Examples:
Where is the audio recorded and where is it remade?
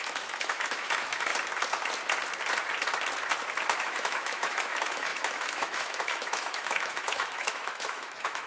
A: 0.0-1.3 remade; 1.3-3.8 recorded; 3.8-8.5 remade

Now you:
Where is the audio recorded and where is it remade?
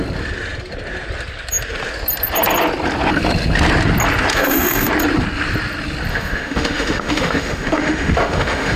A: 0.0-4.3 recorded; 4.3-4.9 remade; 4.9-6.1 recorded; 6.1-8.8 remade